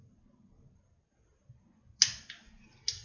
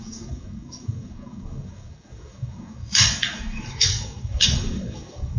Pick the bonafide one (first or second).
first